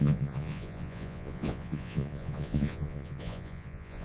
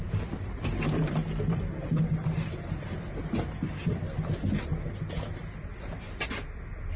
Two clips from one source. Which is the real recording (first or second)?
second